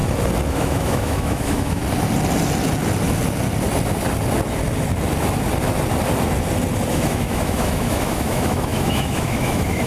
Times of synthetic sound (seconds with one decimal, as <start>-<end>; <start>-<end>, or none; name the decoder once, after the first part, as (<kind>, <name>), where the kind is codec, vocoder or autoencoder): 0.5-1.8 (autoencoder, DAC-VAE); 6.9-9.9

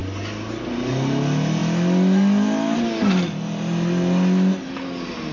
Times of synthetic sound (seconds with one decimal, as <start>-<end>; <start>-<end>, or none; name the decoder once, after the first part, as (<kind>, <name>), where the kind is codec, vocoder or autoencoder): none

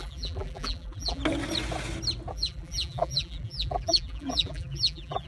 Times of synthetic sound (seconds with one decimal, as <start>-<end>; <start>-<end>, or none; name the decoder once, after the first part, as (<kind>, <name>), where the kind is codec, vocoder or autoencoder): 0.0-1.2 (vocoder, BigVGAN v2); 2.3-5.3

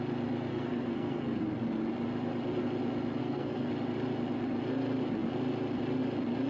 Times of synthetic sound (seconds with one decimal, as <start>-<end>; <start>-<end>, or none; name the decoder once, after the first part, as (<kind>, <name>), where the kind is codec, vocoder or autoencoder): 0.5-1.4 (codec, SNAC); 3.2-3.7

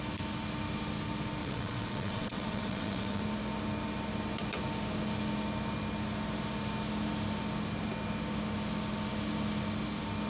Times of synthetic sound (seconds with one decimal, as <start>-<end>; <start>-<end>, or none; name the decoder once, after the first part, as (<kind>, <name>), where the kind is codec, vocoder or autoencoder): 1.4-3.2 (vocoder, WaveNeXt)

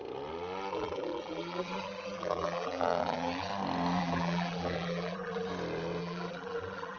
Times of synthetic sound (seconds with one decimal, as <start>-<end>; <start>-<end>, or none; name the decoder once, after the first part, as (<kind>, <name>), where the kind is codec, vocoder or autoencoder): 0.7-3.5 (vocoder, BigVGAN v2); 4.0-5.5; 6.0-7.0